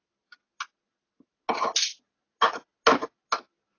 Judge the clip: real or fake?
real